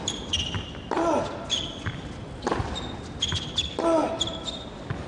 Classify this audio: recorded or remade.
recorded